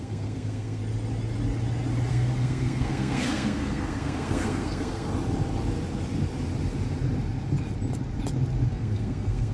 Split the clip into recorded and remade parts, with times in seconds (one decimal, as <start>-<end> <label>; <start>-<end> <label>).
0.0-0.8 remade; 0.8-2.1 recorded; 2.1-5.1 remade; 5.1-8.7 recorded; 8.7-9.5 remade

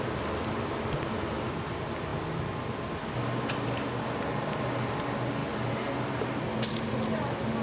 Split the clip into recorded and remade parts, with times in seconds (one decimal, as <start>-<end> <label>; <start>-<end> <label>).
0.0-7.6 recorded

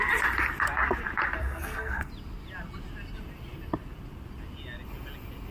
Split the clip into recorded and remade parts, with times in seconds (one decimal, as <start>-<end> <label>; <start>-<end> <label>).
0.0-1.4 recorded; 1.4-2.1 remade; 2.1-5.5 recorded

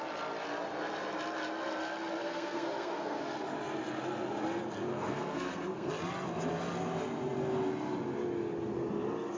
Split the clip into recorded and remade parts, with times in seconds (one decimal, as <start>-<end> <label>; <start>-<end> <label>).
0.0-2.2 recorded; 2.2-3.2 remade; 3.2-4.9 recorded; 4.9-5.9 remade; 5.9-9.4 recorded

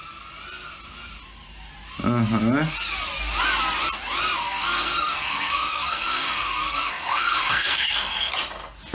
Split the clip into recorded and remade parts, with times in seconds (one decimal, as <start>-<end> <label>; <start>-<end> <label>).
0.0-4.4 recorded; 4.4-8.3 remade; 8.3-8.9 recorded

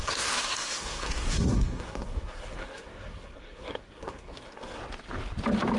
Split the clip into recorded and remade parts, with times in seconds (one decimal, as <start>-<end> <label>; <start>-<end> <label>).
0.0-4.8 remade; 4.8-5.8 recorded

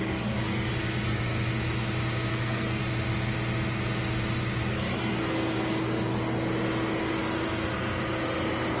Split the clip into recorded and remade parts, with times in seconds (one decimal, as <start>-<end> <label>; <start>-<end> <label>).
0.0-2.3 recorded; 2.3-2.8 remade; 2.8-8.8 recorded